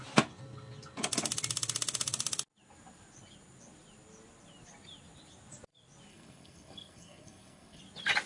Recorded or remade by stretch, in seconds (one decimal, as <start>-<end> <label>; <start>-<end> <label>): 0.0-6.1 recorded; 6.1-7.8 remade; 7.8-8.3 recorded